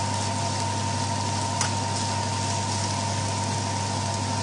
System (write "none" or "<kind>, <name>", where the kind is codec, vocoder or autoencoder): none